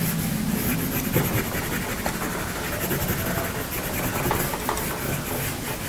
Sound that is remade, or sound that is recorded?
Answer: recorded